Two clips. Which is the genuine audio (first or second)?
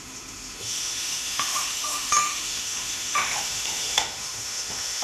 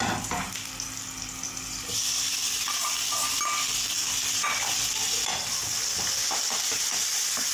second